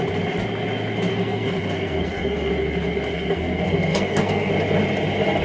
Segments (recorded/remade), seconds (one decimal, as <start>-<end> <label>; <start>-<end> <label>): 0.0-1.1 recorded; 1.1-2.5 remade; 2.5-3.1 recorded; 3.1-4.5 remade; 4.5-5.4 recorded

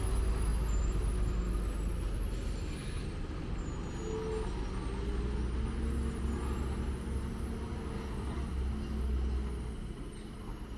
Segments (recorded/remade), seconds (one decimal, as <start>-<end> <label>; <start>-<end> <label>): 0.0-10.8 recorded

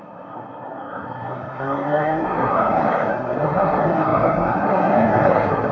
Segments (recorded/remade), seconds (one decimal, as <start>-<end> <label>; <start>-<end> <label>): 0.0-5.7 remade

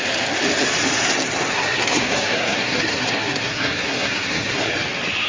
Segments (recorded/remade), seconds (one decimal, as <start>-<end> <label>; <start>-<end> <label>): 0.0-1.5 recorded; 1.5-4.7 remade; 4.7-5.3 recorded

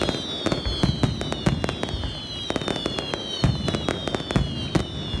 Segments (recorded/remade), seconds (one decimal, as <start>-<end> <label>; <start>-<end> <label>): 0.0-5.2 recorded